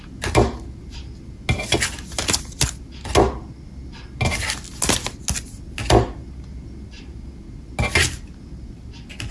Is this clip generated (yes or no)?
no